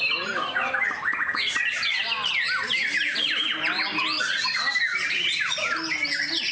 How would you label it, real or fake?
real